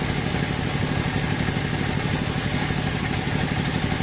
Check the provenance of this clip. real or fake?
real